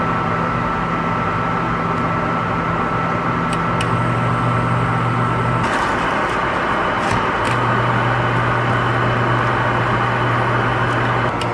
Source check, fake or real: real